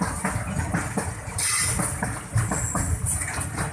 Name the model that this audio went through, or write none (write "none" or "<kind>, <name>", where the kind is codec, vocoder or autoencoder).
none